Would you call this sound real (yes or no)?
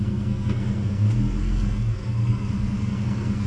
no